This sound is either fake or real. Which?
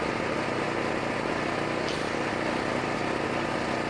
real